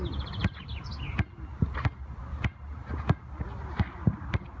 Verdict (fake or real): real